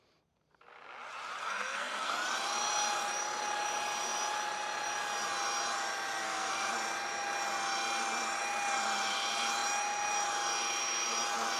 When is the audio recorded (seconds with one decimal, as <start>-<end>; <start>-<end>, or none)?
0.0-1.4; 2.1-6.2; 6.7-11.6